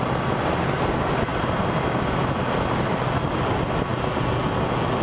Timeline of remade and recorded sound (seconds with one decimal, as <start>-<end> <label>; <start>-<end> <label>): 0.0-5.0 recorded